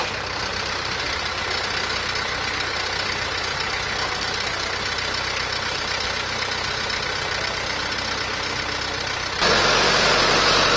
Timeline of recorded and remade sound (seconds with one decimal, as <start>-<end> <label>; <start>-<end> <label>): 0.0-0.5 recorded; 0.5-1.3 remade; 1.3-10.8 recorded